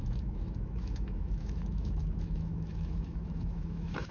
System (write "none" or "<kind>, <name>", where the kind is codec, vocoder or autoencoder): autoencoder, DAC-VAE